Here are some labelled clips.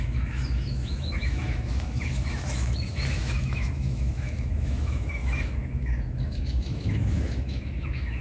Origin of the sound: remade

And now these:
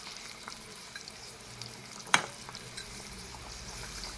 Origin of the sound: remade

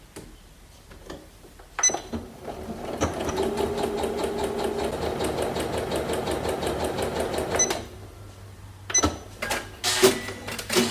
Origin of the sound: recorded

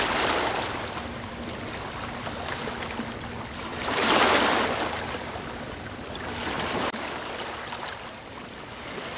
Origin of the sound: recorded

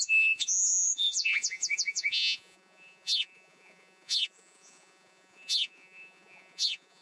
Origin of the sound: remade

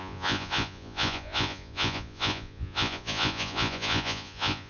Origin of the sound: remade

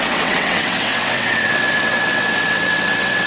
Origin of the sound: remade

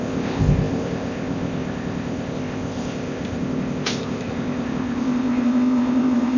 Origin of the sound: remade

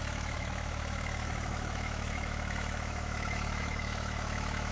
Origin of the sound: remade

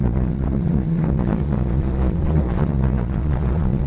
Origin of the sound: remade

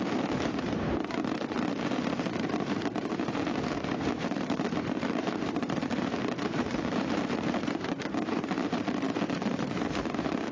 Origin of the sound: remade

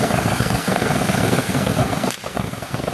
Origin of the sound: remade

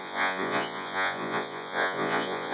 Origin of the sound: remade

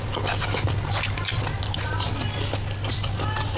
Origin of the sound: recorded